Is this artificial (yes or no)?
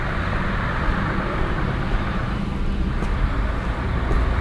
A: no